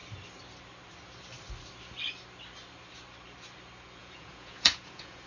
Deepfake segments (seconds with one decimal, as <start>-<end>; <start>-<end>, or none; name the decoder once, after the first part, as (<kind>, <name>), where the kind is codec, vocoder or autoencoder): 4.0-5.3 (vocoder, Vocos)